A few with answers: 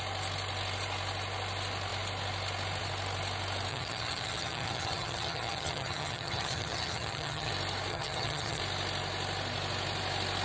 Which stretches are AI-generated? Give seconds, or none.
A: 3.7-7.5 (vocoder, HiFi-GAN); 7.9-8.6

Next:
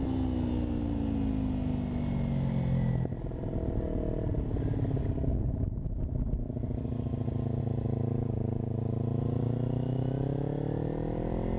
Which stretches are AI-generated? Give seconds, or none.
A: none

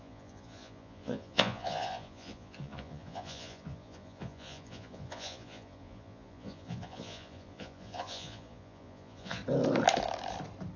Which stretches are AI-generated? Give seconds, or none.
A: 0.0-9.4 (vocoder, Vocos)